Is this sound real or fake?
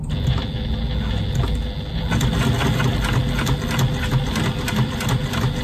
real